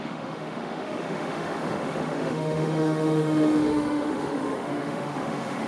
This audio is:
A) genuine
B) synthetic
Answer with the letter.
B